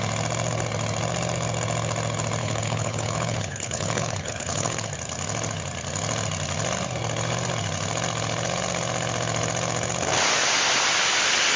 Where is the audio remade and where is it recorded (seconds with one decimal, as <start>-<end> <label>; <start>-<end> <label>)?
0.0-2.4 recorded; 2.4-4.9 remade; 4.9-11.6 recorded